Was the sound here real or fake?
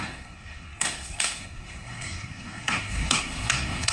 fake